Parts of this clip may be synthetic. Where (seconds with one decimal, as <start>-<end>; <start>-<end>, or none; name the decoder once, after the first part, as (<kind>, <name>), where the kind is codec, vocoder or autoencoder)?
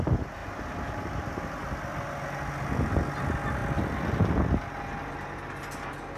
none